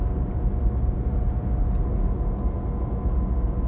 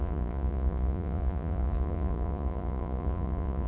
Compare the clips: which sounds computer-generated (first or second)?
second